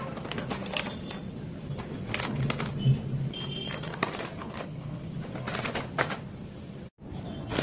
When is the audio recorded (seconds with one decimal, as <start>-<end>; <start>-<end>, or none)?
0.0-4.4; 5.1-7.6

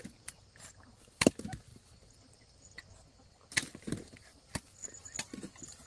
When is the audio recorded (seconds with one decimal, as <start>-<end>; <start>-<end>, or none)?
0.0-5.9

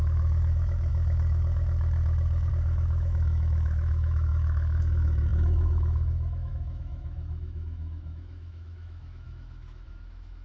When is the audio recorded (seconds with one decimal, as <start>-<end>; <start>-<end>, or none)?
none

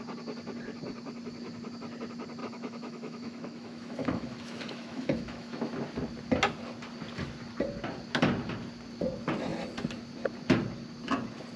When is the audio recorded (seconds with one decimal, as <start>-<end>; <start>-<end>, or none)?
0.0-2.4; 5.7-11.6

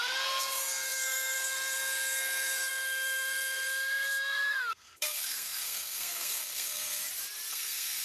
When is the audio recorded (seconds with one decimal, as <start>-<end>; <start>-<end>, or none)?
7.0-7.5